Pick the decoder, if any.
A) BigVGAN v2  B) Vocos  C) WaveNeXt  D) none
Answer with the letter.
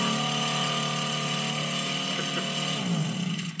D